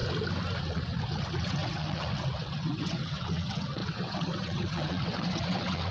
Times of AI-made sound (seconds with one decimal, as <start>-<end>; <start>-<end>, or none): 0.6-5.9